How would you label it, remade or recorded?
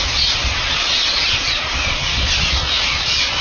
remade